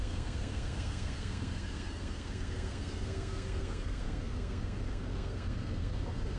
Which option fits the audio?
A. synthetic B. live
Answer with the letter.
A